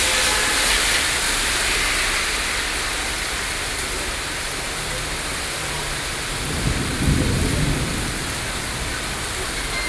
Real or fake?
real